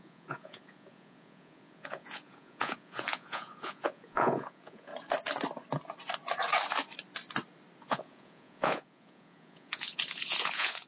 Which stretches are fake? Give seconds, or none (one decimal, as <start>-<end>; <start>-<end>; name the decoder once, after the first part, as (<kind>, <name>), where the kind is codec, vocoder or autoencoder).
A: 0.0-4.9 (vocoder, Vocos); 7.8-10.9

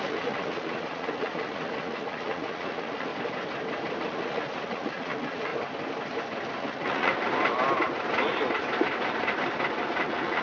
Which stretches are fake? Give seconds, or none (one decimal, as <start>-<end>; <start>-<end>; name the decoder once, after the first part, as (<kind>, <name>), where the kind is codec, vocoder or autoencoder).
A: 0.0-3.1 (vocoder, Vocos); 4.0-5.5; 6.6-7.1; 10.0-10.4

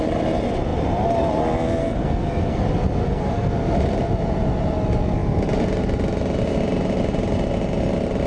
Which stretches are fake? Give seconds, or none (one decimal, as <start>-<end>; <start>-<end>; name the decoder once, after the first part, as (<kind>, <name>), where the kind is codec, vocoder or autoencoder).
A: 1.8-2.6 (codec, SNAC); 3.0-3.5

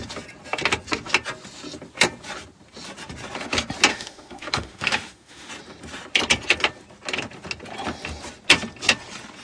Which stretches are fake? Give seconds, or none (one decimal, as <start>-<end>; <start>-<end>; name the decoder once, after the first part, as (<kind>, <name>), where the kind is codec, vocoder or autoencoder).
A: 3.9-5.5 (autoencoder, DAC-VAE)